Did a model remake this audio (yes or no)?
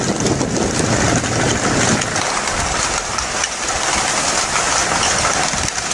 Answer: no